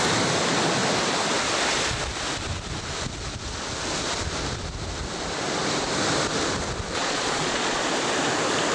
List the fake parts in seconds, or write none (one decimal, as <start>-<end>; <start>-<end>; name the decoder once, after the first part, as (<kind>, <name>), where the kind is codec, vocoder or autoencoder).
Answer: 7.0-7.8 (vocoder, Vocos)